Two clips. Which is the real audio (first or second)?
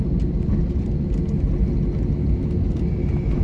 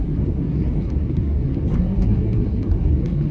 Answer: first